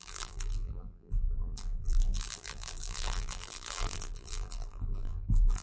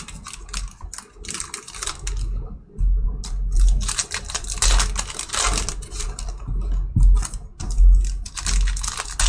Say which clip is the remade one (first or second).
first